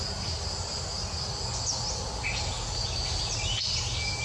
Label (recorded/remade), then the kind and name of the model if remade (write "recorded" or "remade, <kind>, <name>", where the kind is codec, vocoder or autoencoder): recorded